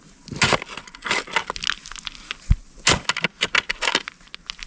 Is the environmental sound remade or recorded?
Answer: recorded